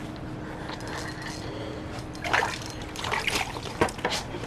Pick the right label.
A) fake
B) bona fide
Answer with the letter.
B